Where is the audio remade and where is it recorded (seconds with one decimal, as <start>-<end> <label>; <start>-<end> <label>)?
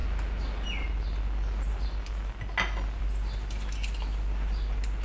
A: 0.0-5.0 recorded